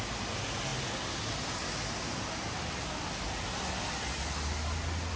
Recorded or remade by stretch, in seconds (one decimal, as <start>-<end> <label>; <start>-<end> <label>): 0.0-5.2 recorded